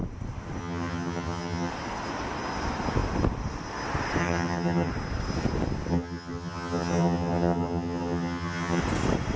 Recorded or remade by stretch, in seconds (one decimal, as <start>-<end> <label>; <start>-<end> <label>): 0.0-0.6 recorded; 0.6-1.7 remade; 1.7-4.2 recorded; 4.2-4.9 remade; 4.9-5.9 recorded; 5.9-8.8 remade; 8.8-9.4 recorded